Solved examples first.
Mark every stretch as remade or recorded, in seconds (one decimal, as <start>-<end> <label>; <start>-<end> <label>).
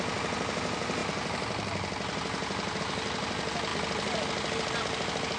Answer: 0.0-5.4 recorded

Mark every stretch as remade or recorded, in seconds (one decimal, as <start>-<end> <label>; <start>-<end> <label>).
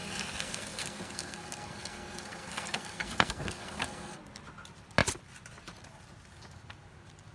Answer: 0.0-4.2 remade; 4.2-7.3 recorded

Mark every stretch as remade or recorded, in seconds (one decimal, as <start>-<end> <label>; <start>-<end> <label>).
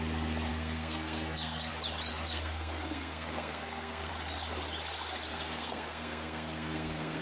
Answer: 0.0-0.5 recorded; 0.5-1.7 remade; 1.7-2.1 recorded; 2.1-4.1 remade; 4.1-5.3 recorded; 5.3-7.2 remade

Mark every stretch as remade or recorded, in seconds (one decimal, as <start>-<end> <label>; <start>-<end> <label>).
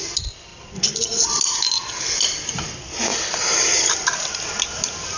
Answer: 0.0-5.2 recorded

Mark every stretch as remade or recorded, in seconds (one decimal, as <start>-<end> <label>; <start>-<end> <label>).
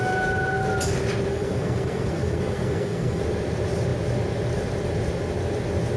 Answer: 0.0-1.3 recorded; 1.3-3.2 remade; 3.2-6.0 recorded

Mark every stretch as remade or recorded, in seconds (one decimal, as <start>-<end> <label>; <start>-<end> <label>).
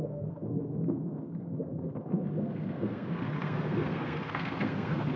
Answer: 0.0-5.2 remade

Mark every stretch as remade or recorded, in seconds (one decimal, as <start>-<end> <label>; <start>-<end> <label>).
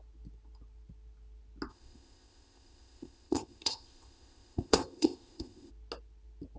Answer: 0.0-1.7 recorded; 1.7-5.7 remade; 5.7-6.6 recorded